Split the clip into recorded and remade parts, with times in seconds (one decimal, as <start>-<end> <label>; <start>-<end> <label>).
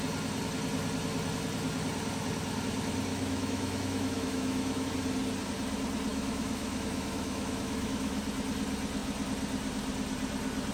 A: 0.0-3.1 recorded; 3.1-4.9 remade; 4.9-6.1 recorded; 6.1-8.2 remade; 8.2-10.7 recorded